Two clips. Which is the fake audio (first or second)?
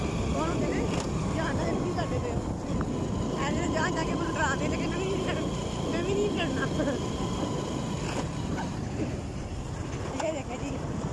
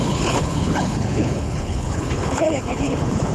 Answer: second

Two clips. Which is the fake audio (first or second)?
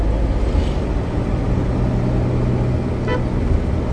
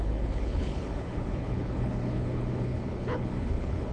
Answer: second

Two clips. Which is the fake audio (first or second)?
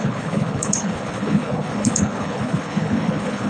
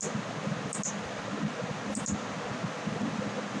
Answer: first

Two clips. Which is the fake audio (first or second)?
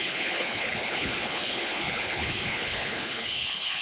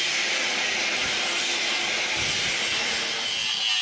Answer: first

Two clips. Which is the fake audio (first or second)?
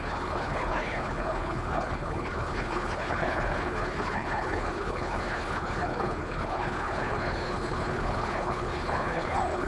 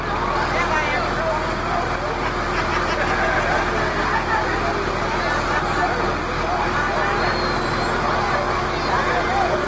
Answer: first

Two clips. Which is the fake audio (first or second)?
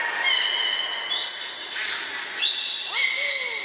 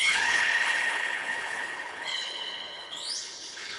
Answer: second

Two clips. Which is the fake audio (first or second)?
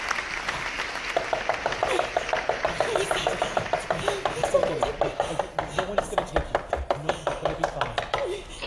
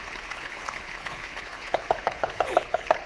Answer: second